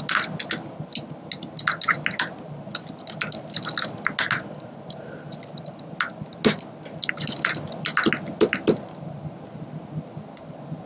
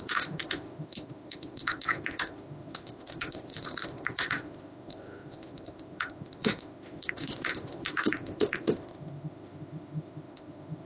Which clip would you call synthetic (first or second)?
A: second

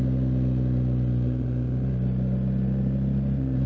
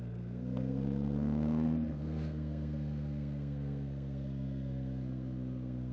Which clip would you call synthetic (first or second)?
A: second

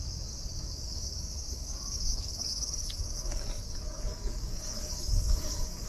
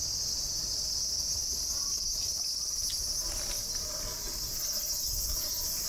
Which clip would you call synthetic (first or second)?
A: first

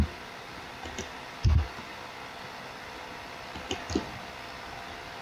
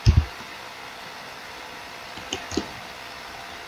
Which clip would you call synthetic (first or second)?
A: second